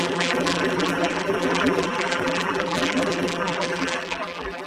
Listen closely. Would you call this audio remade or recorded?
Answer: remade